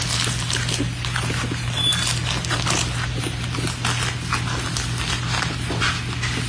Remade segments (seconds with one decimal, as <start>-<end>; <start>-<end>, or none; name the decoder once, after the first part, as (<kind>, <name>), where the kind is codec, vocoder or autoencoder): none